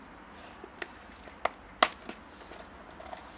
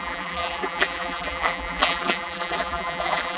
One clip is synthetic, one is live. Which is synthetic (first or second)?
second